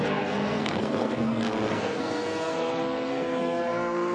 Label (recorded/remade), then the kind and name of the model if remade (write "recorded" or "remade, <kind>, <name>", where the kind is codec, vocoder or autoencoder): remade, codec, SNAC